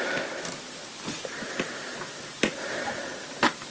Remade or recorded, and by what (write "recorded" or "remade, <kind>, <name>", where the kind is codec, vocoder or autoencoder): recorded